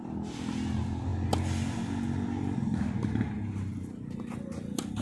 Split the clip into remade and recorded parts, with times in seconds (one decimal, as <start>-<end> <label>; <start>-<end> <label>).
0.0-5.0 recorded